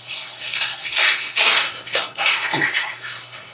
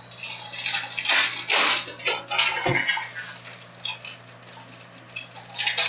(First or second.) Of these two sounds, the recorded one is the second